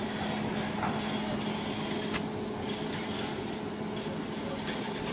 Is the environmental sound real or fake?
real